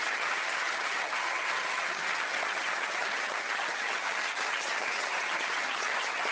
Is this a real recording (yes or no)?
no